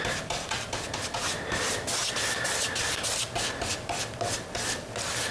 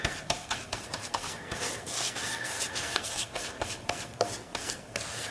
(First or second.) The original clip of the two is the first